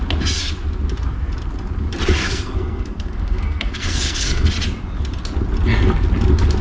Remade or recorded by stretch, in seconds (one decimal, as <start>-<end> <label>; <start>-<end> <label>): 0.0-2.2 recorded; 2.2-4.5 remade; 4.5-6.6 recorded